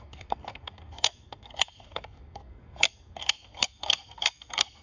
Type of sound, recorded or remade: remade